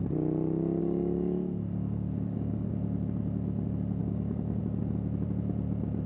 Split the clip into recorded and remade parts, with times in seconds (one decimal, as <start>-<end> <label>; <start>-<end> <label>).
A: 0.0-0.8 recorded; 0.8-2.7 remade; 2.7-4.0 recorded; 4.0-4.6 remade; 4.6-6.1 recorded